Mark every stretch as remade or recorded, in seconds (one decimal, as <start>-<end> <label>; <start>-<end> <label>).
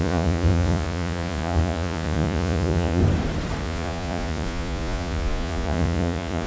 0.0-3.0 remade; 3.0-3.6 recorded; 3.6-6.5 remade